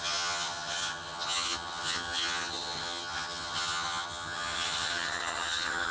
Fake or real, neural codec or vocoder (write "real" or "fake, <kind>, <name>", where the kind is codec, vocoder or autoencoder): fake, vocoder, HiFi-GAN